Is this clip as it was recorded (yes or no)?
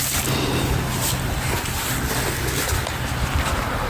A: yes